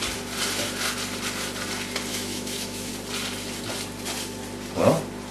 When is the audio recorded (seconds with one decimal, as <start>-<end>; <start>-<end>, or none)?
0.0-2.1; 2.9-5.3